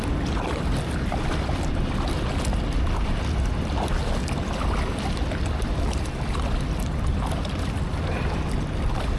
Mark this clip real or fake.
real